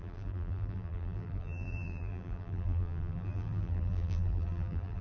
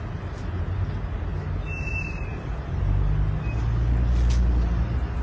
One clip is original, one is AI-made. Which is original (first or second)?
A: second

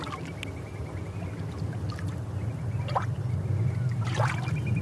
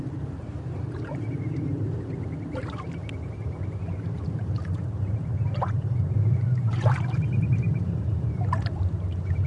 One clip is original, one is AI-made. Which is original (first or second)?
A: first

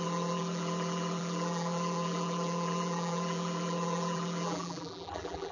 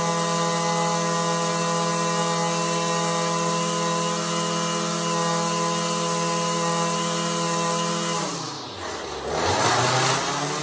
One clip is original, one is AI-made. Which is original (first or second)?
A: second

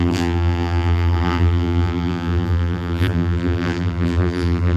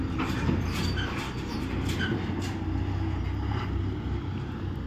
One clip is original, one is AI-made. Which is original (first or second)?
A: second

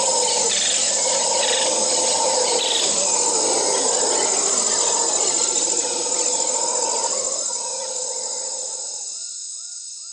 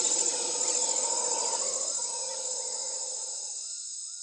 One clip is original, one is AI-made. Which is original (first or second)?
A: second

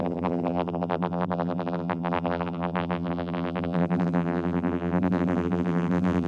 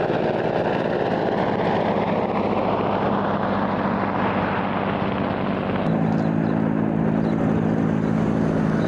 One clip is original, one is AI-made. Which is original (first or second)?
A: second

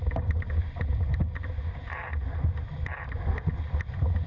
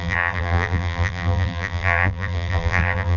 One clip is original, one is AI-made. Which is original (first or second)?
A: first